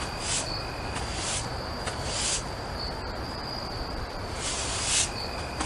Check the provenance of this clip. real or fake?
fake